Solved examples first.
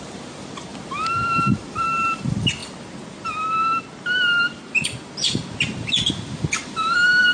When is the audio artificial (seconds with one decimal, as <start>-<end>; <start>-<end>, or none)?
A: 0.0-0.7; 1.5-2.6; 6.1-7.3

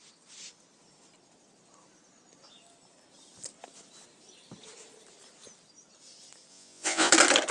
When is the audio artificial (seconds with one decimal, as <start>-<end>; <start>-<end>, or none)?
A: 6.5-7.1

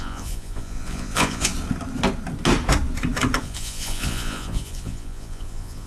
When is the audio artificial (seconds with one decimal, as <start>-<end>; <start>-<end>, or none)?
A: 0.0-1.5; 3.4-5.9

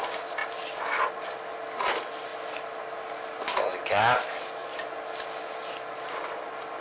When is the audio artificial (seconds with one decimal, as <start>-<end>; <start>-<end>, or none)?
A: none